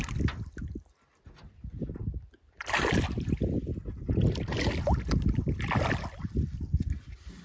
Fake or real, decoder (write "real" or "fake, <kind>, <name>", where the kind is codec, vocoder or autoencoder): real